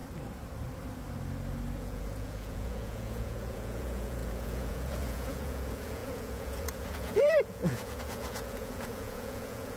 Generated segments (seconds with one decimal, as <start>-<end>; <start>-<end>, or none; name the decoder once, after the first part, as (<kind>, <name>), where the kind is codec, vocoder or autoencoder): 1.8-9.8 (vocoder, Vocos)